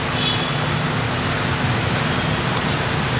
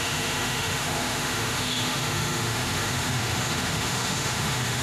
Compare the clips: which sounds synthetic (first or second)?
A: second